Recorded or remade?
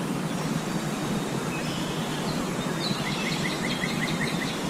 remade